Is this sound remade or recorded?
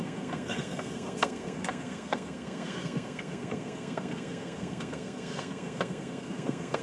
remade